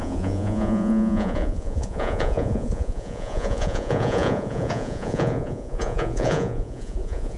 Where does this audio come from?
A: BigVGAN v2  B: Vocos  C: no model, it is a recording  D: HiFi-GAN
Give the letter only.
B